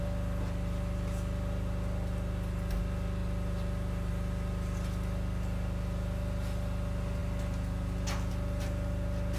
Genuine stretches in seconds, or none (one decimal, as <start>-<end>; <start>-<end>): 0.0-9.4